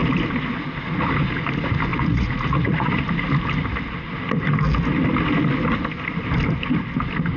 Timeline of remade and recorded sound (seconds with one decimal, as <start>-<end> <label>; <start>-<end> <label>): 0.0-1.9 recorded; 1.9-3.0 remade; 3.0-7.4 recorded